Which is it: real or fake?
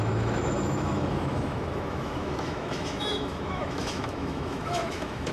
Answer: fake